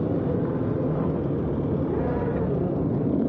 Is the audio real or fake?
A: real